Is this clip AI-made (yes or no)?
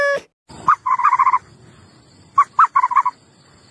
no